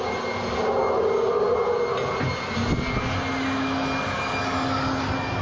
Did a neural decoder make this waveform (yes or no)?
no